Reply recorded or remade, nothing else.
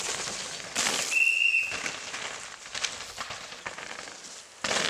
recorded